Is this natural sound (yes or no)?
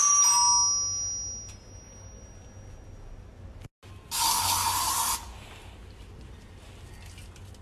yes